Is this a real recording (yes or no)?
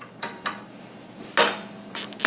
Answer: yes